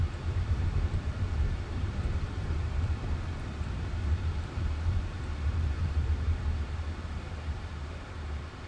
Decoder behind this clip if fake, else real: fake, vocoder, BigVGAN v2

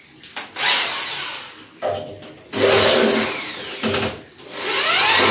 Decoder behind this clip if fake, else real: real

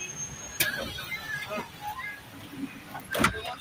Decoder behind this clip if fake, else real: real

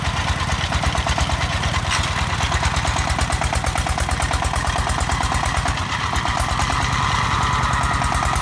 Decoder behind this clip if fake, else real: real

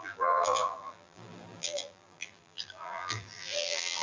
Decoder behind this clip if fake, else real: fake, vocoder, BigVGAN v2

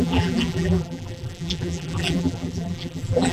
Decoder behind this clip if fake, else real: fake, vocoder, BigVGAN v2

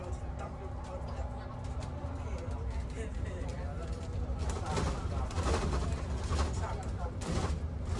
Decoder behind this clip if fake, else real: real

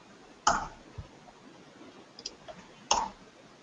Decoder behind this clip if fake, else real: real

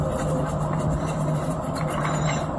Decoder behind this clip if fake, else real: real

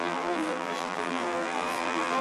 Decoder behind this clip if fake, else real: fake, vocoder, BigVGAN v2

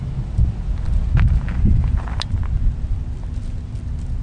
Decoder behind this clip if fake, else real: real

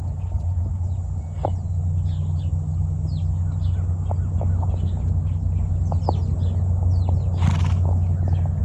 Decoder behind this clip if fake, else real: real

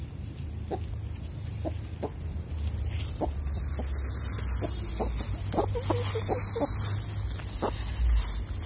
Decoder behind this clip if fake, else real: real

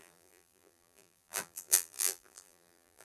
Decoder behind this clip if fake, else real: fake, vocoder, BigVGAN v2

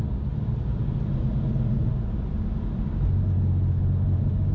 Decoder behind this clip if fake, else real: real